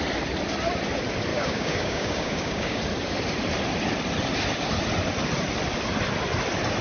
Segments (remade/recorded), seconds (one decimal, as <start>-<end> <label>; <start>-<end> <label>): 0.0-1.3 recorded; 1.3-2.8 remade; 2.8-6.8 recorded